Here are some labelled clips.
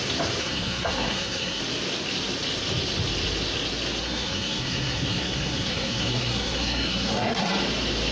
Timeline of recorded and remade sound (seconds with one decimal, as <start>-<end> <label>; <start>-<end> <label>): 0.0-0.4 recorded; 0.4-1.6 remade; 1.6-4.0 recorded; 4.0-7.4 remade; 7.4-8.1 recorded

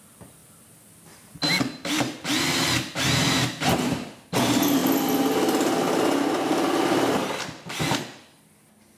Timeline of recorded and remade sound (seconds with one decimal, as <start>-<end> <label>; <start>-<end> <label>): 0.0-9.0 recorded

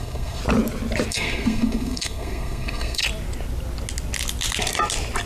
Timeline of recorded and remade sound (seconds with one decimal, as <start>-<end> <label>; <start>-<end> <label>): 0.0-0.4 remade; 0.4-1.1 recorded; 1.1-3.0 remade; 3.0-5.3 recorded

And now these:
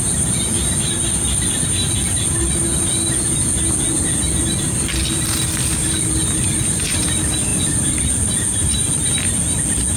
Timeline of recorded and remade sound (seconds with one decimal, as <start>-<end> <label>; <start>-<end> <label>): 0.0-10.0 recorded

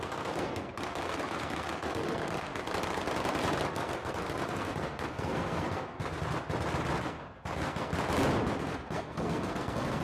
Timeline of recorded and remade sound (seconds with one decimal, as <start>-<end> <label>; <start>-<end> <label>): 0.0-2.5 remade; 2.5-3.7 recorded; 3.7-6.0 remade; 6.0-7.0 recorded; 7.0-7.9 remade; 7.9-8.6 recorded; 8.6-10.0 remade